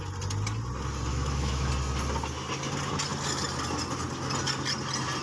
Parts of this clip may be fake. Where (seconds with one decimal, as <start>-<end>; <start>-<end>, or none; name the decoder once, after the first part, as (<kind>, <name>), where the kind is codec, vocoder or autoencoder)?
1.1-1.7 (autoencoder, DAC-VAE)